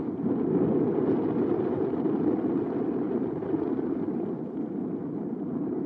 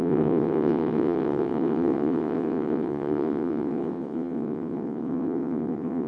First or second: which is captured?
first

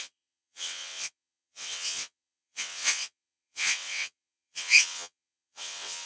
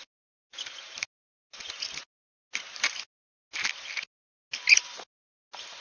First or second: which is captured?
second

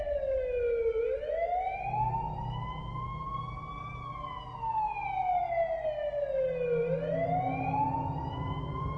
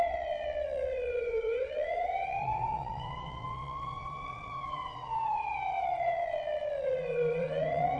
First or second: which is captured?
first